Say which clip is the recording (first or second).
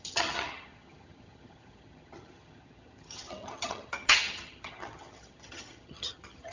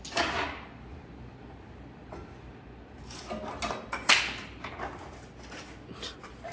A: second